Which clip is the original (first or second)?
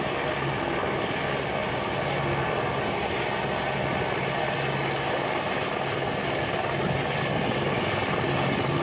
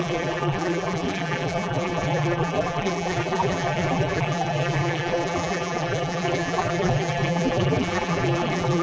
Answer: first